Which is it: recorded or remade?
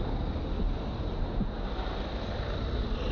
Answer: recorded